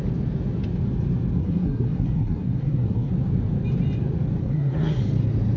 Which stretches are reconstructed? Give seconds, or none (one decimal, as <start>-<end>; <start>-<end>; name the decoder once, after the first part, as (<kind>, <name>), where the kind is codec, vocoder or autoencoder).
1.4-3.1 (codec, SNAC); 4.4-5.0

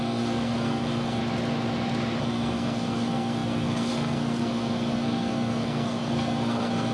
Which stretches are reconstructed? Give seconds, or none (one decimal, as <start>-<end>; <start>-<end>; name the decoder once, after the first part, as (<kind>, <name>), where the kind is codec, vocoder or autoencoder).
0.0-1.2 (codec, SNAC); 2.2-6.9

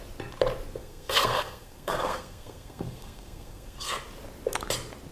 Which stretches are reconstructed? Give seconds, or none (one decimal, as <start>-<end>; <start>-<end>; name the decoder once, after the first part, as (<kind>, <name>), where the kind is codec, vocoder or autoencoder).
0.8-3.9 (codec, SNAC)

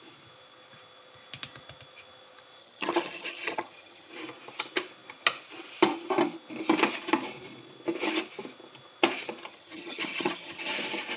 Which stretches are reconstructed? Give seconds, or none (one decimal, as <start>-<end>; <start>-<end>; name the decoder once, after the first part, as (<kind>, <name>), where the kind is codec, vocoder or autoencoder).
2.6-4.1 (vocoder, HiFi-GAN); 9.5-10.7